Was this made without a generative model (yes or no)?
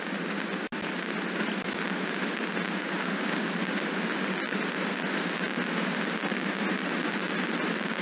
yes